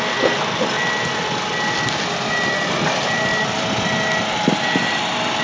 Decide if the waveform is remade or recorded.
recorded